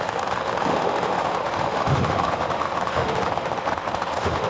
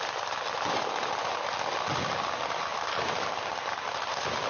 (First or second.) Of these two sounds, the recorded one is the second